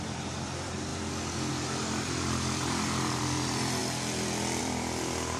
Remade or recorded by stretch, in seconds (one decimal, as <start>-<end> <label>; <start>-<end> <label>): 0.0-0.9 remade; 0.9-1.5 recorded; 1.5-3.8 remade; 3.8-4.6 recorded; 4.6-5.4 remade